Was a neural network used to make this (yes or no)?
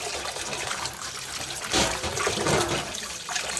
no